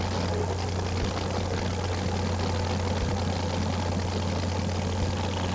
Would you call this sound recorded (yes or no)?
yes